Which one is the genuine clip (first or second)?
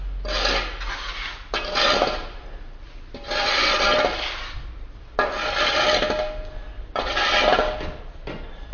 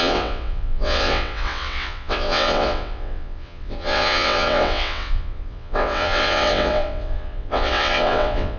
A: first